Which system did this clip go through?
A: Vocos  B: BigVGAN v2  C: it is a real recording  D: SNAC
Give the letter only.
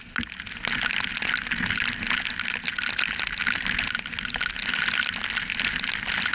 C